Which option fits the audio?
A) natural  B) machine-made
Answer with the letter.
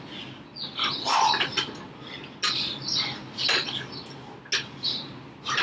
A